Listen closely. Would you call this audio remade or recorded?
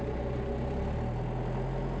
recorded